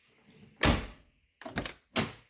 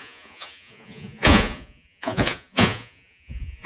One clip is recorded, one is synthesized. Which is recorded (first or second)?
first